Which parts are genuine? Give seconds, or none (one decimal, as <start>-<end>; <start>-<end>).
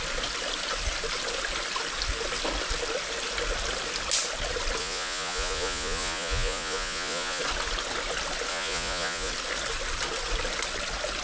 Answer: 0.0-4.8; 7.4-8.5; 9.3-11.2